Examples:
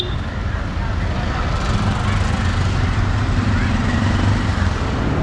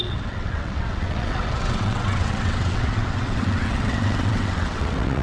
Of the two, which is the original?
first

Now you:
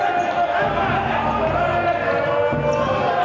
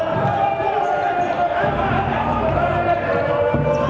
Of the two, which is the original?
first